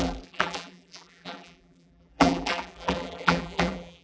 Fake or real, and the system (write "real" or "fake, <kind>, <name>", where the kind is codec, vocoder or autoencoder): fake, vocoder, BigVGAN v2